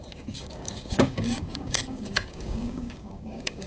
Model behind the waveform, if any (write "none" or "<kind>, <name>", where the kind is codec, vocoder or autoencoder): codec, DAC